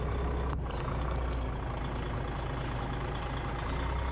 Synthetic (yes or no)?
no